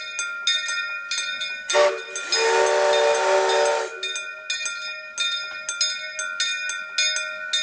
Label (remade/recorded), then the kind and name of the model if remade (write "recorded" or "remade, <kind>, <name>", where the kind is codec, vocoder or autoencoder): recorded